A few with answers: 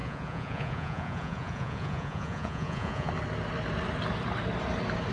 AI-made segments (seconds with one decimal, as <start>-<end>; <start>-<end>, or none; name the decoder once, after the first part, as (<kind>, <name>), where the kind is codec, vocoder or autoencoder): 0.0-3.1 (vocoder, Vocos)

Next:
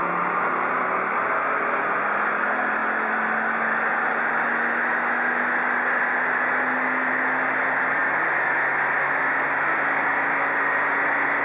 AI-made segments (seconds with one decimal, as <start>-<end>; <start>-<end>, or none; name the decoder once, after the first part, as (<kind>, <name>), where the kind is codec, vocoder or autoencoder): none

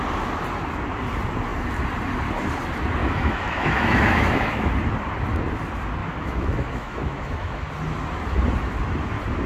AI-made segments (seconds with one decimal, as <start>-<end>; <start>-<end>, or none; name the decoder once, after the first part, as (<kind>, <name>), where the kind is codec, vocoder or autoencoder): 3.0-4.7 (autoencoder, DAC-VAE); 6.0-7.7

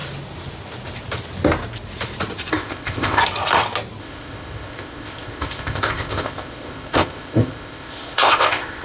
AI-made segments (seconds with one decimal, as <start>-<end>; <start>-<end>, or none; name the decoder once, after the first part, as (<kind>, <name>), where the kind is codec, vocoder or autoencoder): 2.5-3.2 (codec, ZipCodec); 4.0-8.8

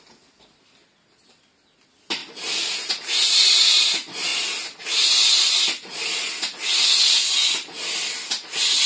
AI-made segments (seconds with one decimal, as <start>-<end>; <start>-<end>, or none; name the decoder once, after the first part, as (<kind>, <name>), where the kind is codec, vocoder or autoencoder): none

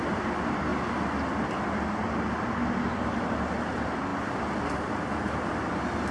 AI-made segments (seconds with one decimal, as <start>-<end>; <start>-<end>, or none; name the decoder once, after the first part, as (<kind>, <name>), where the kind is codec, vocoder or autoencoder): none